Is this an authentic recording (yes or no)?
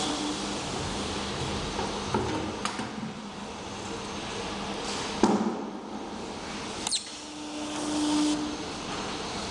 yes